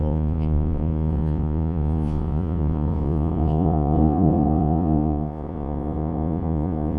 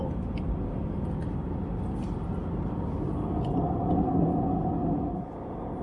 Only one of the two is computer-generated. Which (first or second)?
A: first